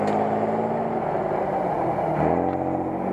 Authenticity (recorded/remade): recorded